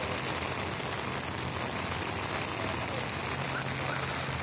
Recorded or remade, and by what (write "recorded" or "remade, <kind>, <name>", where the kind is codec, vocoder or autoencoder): recorded